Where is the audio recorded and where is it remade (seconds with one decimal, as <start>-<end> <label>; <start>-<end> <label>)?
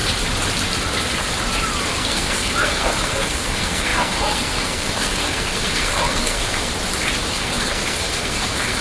0.0-1.9 recorded; 1.9-6.7 remade; 6.7-7.3 recorded; 7.3-8.8 remade